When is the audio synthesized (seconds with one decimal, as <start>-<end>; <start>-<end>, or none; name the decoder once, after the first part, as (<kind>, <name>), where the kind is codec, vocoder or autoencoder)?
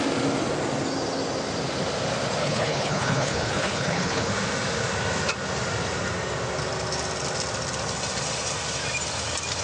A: 2.4-4.3 (codec, HILCodec)